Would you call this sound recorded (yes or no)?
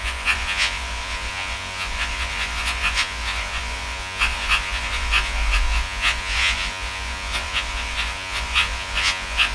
no